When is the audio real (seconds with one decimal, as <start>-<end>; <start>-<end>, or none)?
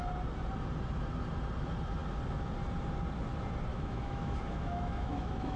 0.0-3.7